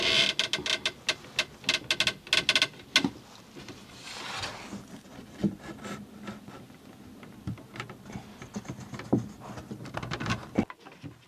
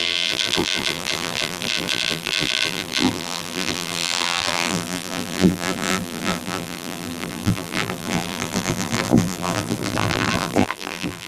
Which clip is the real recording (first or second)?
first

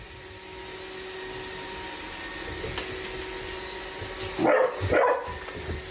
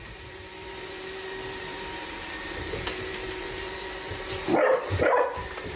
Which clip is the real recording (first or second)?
first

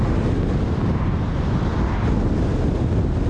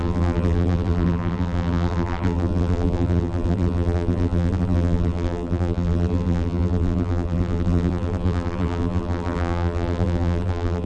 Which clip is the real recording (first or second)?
first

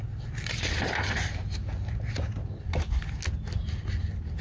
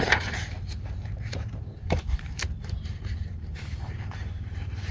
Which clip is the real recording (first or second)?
first